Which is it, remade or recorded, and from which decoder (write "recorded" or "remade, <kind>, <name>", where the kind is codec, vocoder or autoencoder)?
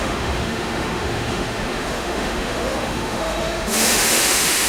remade, autoencoder, DAC-VAE